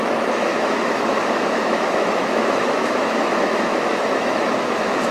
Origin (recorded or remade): remade